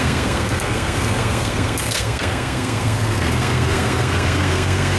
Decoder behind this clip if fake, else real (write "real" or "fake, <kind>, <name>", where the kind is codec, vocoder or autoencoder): fake, codec, SNAC